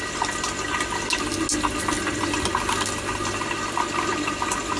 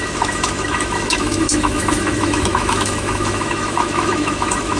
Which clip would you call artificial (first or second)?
second